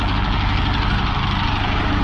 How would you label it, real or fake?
real